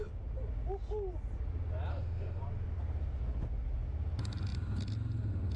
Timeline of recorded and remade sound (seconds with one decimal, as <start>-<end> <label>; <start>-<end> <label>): 0.0-1.9 recorded; 1.9-2.4 remade; 2.4-5.6 recorded